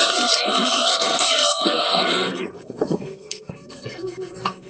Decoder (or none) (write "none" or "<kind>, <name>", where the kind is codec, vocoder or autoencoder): codec, SNAC